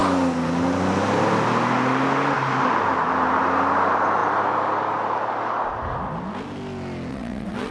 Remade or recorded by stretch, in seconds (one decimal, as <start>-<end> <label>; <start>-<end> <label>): 0.0-7.1 recorded; 7.1-7.7 remade